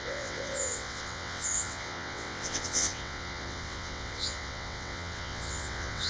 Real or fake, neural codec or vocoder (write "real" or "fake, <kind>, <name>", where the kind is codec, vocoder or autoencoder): fake, vocoder, WaveNeXt